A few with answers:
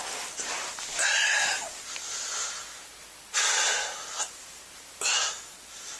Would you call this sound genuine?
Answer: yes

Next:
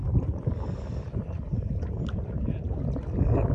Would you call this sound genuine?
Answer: yes